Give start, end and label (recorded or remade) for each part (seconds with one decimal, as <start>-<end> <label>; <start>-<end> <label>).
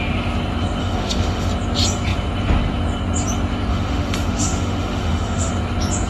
0.0-0.8 recorded; 0.8-1.5 remade; 1.5-3.7 recorded; 3.7-5.5 remade; 5.5-6.1 recorded